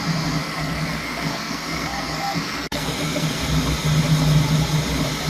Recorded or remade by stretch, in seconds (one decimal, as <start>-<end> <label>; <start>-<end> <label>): 0.0-0.4 recorded; 0.4-3.4 remade; 3.4-5.3 recorded